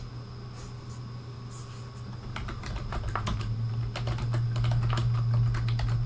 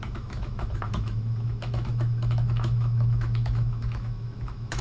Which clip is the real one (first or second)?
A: first